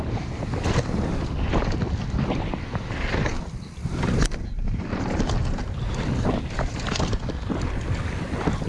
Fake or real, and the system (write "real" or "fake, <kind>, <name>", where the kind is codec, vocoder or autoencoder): real